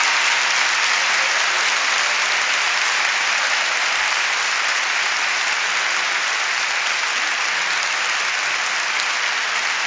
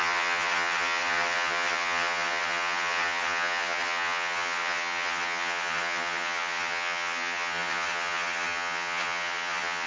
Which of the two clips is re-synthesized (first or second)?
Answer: second